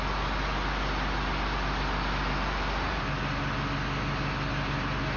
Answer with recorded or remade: recorded